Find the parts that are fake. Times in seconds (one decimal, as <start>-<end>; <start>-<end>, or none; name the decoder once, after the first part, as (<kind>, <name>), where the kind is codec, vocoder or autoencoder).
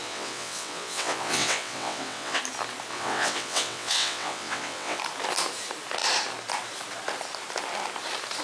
0.0-2.4 (vocoder, WaveNeXt); 2.9-5.0